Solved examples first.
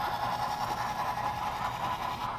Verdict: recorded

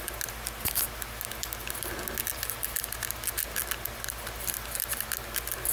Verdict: recorded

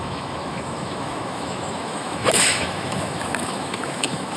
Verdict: remade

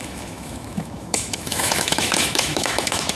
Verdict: remade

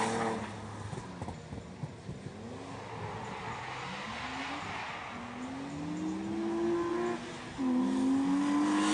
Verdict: recorded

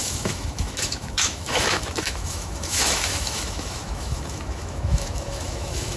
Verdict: remade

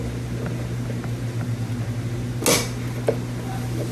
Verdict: recorded